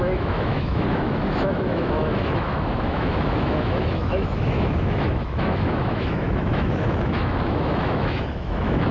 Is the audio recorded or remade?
remade